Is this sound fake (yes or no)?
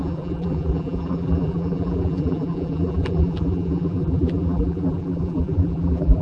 yes